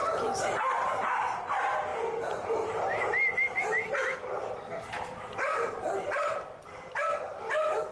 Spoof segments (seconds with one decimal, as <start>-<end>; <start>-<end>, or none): 0.0-1.2; 1.9-2.7; 4.1-4.6; 5.5-7.1